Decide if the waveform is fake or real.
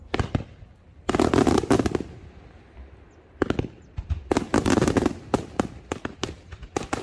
real